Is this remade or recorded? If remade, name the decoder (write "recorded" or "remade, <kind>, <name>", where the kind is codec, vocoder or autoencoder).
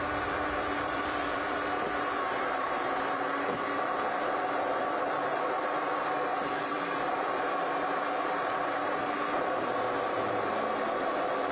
remade, vocoder, BigVGAN v2